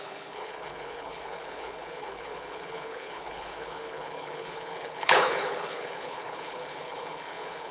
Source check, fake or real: fake